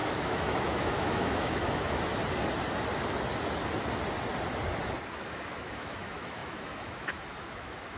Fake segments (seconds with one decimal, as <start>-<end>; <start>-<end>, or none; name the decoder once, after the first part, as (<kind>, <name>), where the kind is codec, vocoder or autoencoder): 0.0-2.1 (autoencoder, DAC-VAE); 5.1-8.0